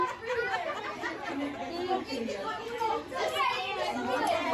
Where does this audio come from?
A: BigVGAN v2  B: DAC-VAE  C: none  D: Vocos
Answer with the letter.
C